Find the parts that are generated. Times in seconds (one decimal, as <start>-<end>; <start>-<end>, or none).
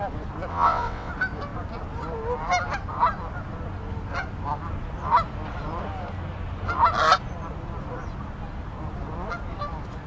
0.5-1.1